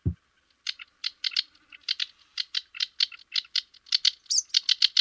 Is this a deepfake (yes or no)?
no